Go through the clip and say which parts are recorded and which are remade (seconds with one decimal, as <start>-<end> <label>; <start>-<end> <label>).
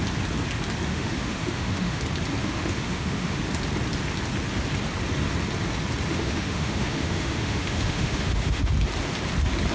0.0-0.9 recorded; 0.9-2.0 remade; 2.0-2.4 recorded; 2.4-3.4 remade; 3.4-6.1 recorded; 6.1-8.6 remade; 8.6-9.7 recorded